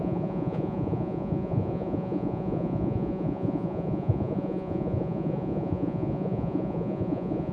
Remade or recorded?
remade